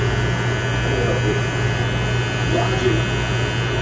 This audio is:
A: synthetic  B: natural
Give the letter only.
B